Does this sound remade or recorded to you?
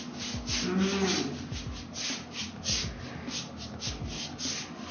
recorded